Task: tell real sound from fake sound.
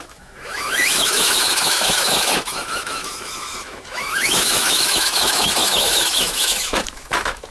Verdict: fake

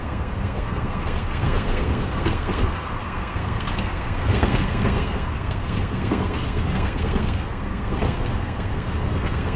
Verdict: fake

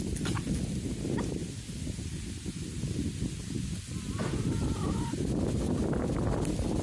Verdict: real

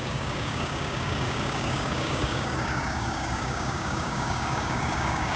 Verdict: fake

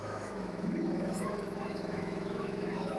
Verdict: fake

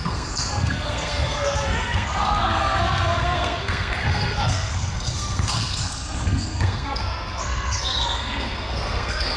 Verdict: fake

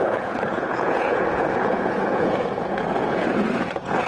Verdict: fake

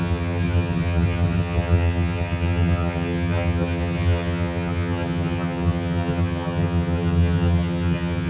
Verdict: fake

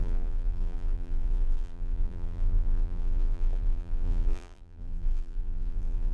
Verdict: fake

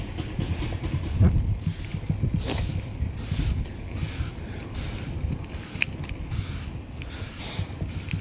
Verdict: real